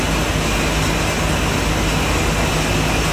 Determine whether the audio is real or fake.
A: real